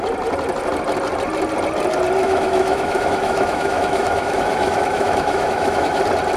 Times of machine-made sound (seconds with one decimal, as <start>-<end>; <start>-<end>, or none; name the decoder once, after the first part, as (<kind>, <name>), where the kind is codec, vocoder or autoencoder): 2.2-6.0 (autoencoder, DAC-VAE)